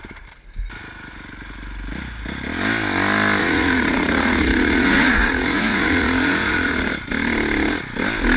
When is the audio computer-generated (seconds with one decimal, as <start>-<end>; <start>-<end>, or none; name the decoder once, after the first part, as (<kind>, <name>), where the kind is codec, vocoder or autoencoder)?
3.4-6.9 (vocoder, Vocos)